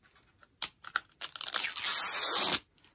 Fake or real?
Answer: real